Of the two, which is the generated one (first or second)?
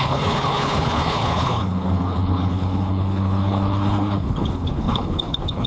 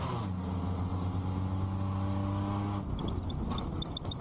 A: first